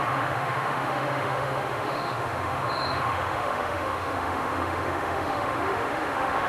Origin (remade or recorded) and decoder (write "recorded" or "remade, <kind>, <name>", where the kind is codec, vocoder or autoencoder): remade, autoencoder, DAC-VAE